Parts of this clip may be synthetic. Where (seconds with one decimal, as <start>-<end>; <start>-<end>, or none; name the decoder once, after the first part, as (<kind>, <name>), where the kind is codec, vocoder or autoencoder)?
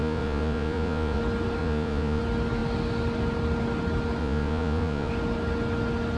0.0-1.2 (vocoder, Vocos); 1.6-2.2; 4.2-5.1